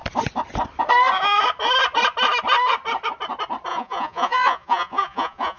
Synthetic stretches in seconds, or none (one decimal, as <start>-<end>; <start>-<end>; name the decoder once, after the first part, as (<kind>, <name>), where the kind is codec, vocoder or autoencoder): 3.7-5.6 (vocoder, Vocos)